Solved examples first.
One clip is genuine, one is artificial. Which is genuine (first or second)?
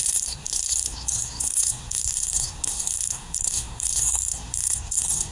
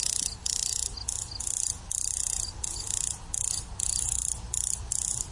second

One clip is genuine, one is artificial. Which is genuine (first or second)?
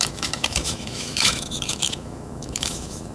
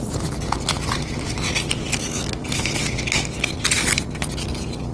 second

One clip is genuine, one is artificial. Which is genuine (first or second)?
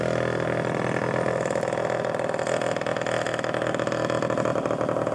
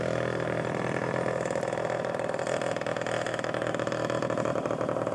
first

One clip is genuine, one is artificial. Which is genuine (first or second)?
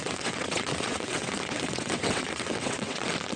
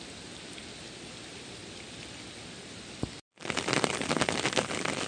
second